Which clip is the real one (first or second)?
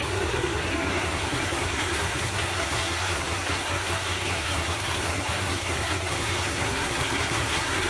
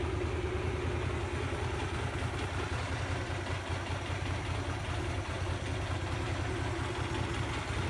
second